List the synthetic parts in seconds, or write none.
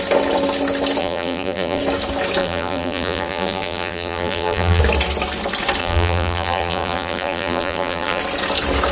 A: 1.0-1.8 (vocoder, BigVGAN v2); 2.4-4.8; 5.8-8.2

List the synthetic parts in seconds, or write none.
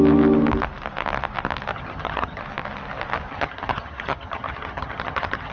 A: 1.7-2.4 (vocoder, HiFi-GAN); 3.3-5.5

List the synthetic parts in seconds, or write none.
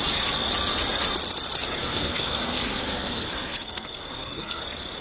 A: 1.8-4.6 (codec, SNAC)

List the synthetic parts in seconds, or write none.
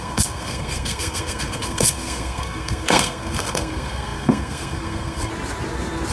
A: 0.0-5.3 (codec, SNAC)